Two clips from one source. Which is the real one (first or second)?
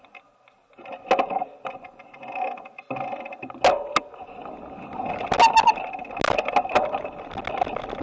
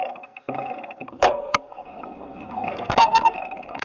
first